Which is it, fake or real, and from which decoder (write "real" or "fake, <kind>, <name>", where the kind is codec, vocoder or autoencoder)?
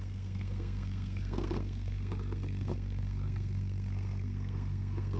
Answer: fake, codec, SNAC